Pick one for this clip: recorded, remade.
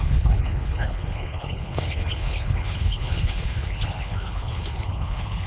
remade